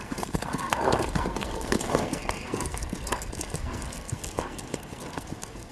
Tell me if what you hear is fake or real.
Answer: fake